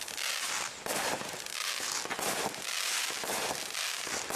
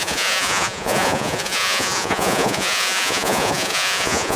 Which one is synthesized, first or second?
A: second